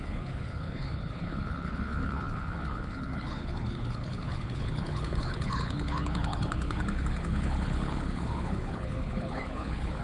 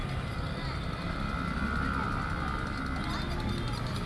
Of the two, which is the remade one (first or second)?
first